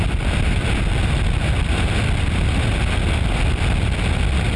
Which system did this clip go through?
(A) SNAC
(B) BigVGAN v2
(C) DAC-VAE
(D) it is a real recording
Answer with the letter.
D